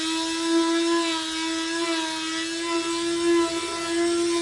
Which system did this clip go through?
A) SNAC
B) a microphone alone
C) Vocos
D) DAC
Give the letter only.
B